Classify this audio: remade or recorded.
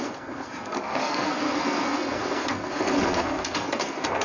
remade